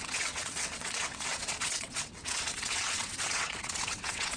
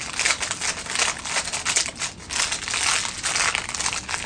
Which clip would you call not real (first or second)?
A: first